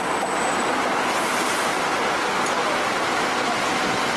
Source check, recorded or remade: recorded